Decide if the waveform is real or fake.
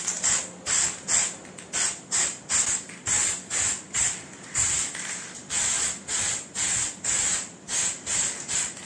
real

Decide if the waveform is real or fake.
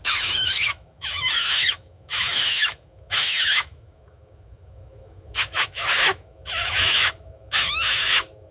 fake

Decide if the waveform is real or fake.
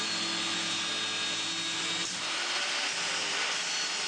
real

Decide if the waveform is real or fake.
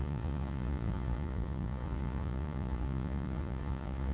fake